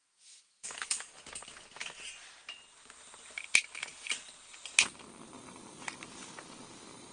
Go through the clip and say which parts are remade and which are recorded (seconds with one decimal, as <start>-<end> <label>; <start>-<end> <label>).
0.0-1.2 remade; 1.2-7.1 recorded